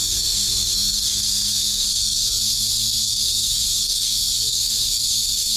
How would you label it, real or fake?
fake